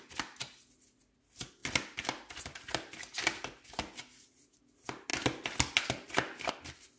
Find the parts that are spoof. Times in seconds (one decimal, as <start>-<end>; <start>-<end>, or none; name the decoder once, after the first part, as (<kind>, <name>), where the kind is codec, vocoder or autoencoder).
none